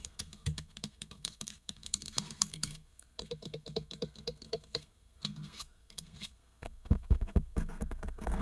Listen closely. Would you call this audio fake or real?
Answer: fake